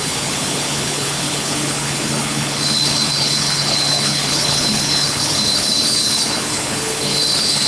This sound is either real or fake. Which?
fake